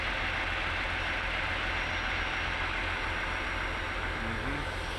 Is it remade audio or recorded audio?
recorded